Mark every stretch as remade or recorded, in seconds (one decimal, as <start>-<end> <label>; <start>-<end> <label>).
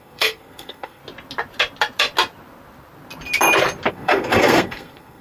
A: 0.0-1.0 remade; 1.0-3.9 recorded; 3.9-5.2 remade